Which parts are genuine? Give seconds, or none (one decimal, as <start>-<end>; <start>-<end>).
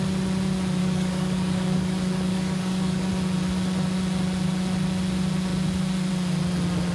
0.0-0.8; 3.1-6.9